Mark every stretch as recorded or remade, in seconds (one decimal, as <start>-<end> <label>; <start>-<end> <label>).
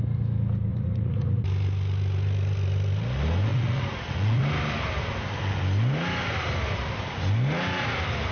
0.0-0.7 recorded; 0.7-1.4 remade; 1.4-3.5 recorded; 3.5-4.4 remade; 4.4-8.3 recorded